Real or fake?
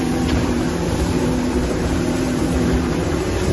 fake